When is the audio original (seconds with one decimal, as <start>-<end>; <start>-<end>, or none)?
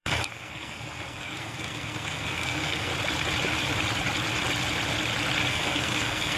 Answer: 2.9-5.5